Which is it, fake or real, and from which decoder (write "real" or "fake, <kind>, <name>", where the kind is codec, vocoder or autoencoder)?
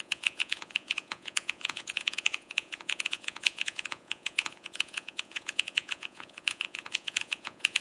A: fake, vocoder, Vocos